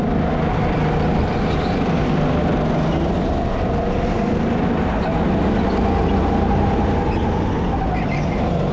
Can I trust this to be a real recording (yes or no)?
yes